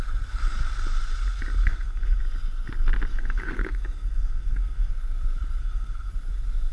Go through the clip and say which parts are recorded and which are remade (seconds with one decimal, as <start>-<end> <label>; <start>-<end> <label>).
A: 0.0-1.6 recorded; 1.6-2.2 remade; 2.2-3.1 recorded; 3.1-4.9 remade; 4.9-5.6 recorded; 5.6-6.1 remade; 6.1-6.7 recorded